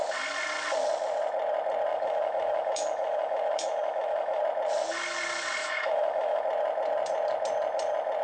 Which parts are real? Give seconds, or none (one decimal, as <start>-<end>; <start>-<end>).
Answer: 0.0-1.9; 4.4-5.6; 6.4-8.2